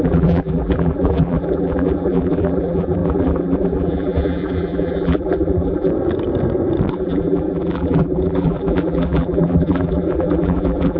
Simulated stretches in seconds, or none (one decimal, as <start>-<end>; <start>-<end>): 0.0-5.9; 6.9-11.0